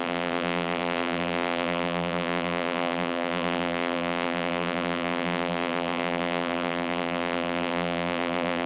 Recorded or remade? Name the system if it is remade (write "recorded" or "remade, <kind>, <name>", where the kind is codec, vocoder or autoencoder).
remade, vocoder, BigVGAN v2